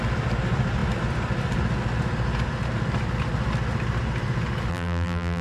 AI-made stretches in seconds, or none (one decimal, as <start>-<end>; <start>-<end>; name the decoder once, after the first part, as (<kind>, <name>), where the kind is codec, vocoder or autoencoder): 4.7-5.4 (vocoder, BigVGAN v2)